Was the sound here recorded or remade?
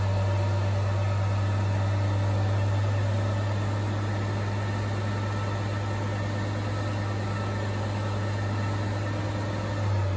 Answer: recorded